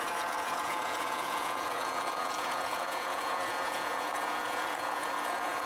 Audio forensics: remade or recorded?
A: remade